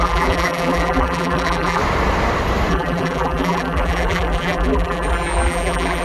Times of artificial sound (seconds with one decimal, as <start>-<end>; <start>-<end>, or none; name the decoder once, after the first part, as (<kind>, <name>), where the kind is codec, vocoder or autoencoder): 0.0-1.8 (vocoder, BigVGAN v2); 2.7-6.0